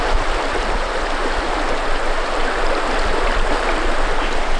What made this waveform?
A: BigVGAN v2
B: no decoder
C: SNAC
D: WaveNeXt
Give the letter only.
A